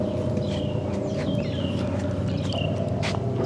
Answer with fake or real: real